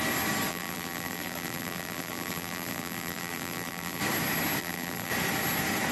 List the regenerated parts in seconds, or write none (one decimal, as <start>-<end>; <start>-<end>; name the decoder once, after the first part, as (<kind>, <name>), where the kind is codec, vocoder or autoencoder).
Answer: 0.5-4.0 (vocoder, BigVGAN v2); 4.6-5.1